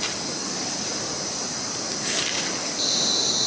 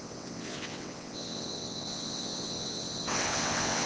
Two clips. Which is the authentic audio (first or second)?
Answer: first